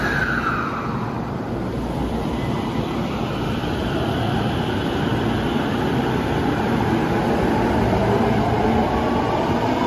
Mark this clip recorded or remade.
remade